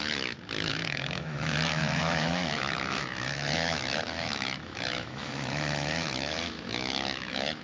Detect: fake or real fake